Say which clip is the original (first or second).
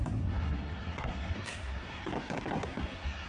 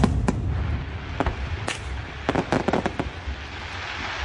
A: second